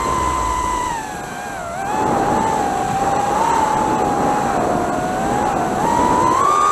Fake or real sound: real